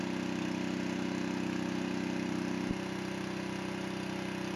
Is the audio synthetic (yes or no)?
no